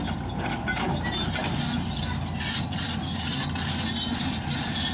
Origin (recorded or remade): recorded